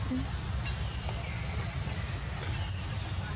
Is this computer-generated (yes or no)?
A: no